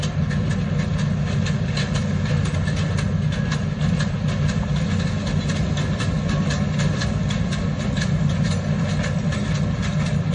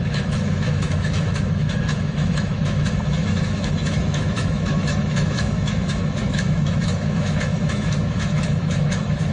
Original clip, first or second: first